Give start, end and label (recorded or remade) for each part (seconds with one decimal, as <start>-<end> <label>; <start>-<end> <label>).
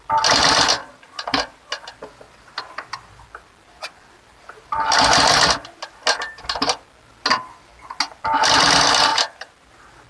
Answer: 0.0-0.8 recorded; 0.8-1.7 remade; 1.7-9.1 recorded; 9.1-9.7 remade; 9.7-10.1 recorded